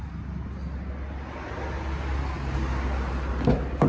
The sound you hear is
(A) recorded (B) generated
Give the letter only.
A